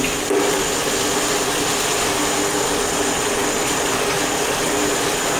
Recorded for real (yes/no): yes